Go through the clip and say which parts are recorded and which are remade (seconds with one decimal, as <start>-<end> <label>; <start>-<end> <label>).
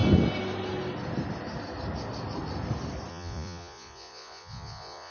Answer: 0.0-3.1 recorded; 3.1-5.1 remade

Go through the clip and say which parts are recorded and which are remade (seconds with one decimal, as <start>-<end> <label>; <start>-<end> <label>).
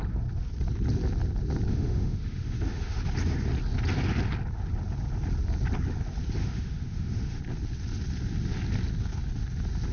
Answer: 0.0-1.7 recorded; 1.7-3.0 remade; 3.0-6.4 recorded; 6.4-7.4 remade; 7.4-9.9 recorded